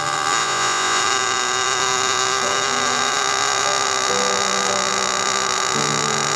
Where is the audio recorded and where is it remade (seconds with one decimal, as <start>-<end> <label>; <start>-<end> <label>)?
0.0-0.4 recorded; 0.4-1.0 remade; 1.0-6.4 recorded